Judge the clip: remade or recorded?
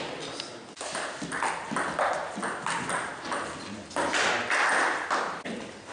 recorded